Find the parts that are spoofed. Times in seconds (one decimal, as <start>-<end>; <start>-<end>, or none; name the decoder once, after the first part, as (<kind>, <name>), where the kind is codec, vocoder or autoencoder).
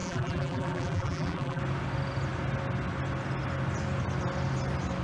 0.0-1.6 (vocoder, BigVGAN v2)